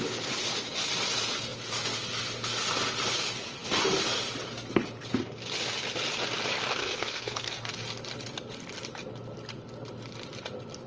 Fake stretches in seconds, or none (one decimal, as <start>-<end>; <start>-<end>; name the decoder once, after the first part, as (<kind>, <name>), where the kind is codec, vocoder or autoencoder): 6.8-7.7 (codec, SNAC)